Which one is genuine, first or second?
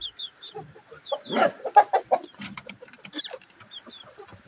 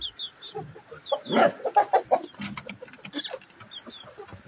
second